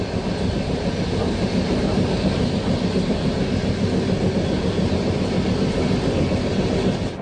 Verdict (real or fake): real